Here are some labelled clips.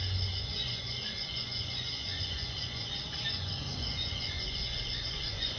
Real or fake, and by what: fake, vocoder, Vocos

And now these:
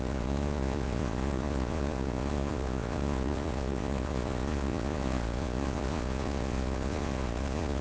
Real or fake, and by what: fake, vocoder, Vocos